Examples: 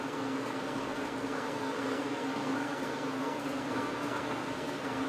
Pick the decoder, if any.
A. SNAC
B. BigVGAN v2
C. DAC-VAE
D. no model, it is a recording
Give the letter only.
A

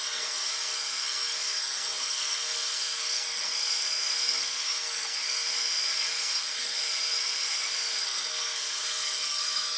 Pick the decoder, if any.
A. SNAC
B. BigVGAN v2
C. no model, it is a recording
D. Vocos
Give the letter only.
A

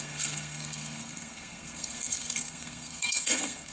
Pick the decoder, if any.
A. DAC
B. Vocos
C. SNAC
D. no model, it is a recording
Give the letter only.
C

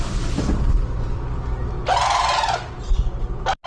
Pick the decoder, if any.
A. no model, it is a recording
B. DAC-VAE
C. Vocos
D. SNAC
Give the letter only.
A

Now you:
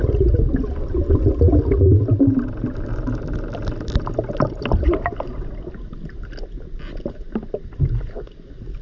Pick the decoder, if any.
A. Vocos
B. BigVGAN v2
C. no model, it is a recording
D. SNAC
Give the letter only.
C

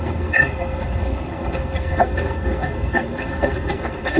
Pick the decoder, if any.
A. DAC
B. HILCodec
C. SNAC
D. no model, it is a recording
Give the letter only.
C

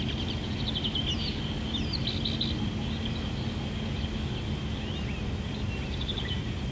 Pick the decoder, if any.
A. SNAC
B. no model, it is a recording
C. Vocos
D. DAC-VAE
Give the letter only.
B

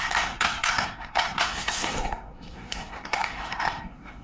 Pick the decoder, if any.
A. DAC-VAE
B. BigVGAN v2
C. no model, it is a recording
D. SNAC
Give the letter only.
D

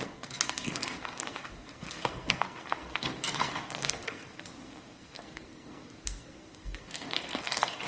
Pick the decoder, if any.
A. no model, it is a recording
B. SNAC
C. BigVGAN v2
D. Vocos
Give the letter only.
B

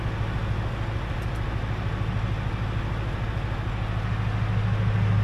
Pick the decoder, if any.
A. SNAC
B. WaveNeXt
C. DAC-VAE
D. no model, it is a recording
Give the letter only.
D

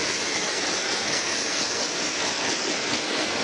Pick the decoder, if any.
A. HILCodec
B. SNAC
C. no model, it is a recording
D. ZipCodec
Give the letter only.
B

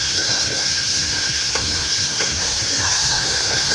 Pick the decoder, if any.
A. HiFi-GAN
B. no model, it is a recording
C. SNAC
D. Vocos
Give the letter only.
C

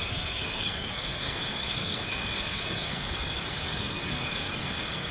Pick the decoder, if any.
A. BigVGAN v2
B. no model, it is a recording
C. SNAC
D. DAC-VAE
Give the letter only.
C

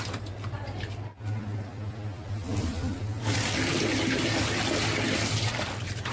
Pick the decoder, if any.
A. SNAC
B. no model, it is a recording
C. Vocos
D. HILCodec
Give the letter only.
B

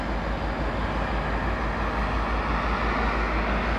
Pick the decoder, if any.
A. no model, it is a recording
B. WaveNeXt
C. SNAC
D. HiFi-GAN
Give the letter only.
A